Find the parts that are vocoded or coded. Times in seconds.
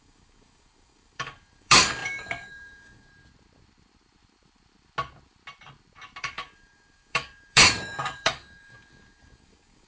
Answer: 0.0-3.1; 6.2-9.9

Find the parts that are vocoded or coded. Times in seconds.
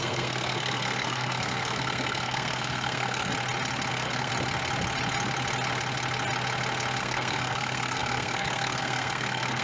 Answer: 0.0-3.3; 3.9-4.3; 7.0-9.6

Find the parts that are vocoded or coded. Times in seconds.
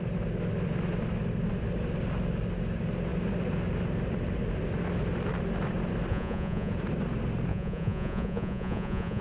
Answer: 6.1-6.7; 7.5-9.2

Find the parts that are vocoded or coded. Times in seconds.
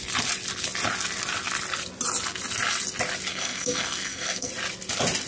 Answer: 3.3-4.5